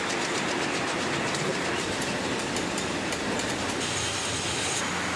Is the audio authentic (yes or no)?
yes